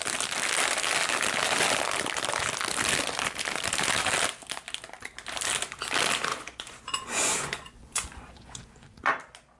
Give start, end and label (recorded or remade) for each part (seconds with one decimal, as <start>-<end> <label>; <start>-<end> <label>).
0.0-6.3 recorded; 6.3-9.1 remade; 9.1-9.6 recorded